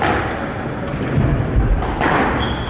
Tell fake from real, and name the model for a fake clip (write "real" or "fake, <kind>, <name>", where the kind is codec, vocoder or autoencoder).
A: real